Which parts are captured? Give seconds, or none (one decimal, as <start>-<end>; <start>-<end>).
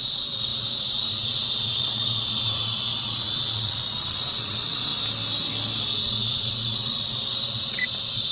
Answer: 4.9-6.0